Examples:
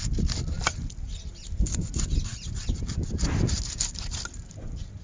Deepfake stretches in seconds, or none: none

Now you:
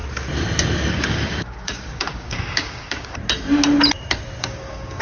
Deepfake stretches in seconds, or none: 0.9-3.2 (codec, DAC); 4.4-5.0

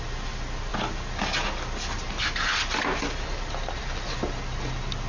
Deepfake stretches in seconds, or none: none

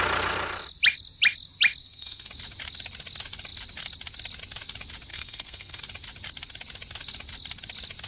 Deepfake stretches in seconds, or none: 1.8-2.3 (codec, SNAC); 5.1-5.8

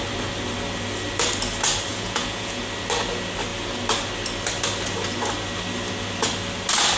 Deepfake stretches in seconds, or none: 1.9-2.6 (vocoder, Vocos)

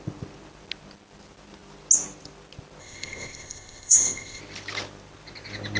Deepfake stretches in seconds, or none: 2.8-4.4 (codec, ZipCodec)

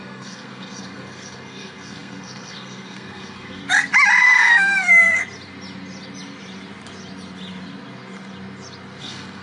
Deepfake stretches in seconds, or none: 0.0-3.6 (codec, SNAC); 4.2-5.2; 9.0-9.4

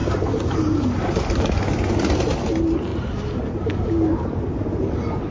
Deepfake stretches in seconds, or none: none